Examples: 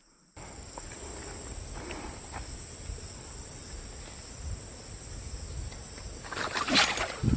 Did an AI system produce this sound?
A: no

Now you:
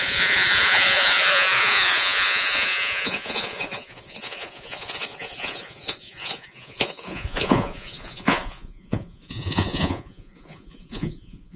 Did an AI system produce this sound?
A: yes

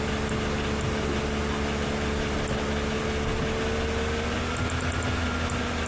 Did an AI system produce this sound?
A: no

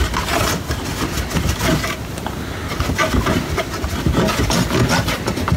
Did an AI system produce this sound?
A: no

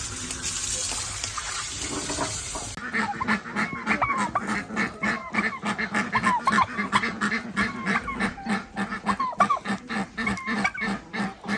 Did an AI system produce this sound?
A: no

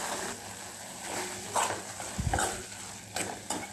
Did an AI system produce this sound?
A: no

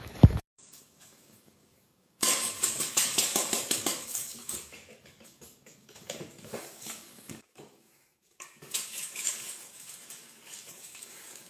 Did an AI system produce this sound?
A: yes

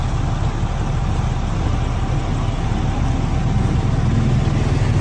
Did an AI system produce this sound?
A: no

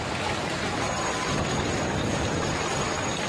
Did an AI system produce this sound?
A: no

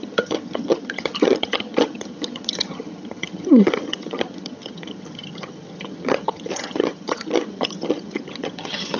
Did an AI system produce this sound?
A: yes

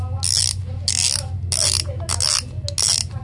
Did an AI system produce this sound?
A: no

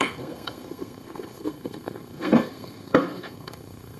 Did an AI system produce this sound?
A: yes